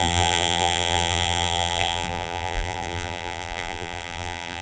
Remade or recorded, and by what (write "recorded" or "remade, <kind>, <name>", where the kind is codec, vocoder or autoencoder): remade, vocoder, BigVGAN v2